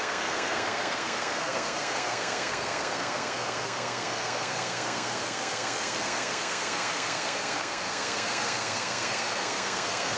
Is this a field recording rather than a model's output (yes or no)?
no